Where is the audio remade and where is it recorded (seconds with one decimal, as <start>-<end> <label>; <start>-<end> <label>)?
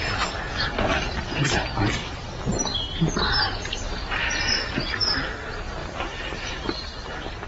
0.0-5.8 recorded; 5.8-7.1 remade; 7.1-7.5 recorded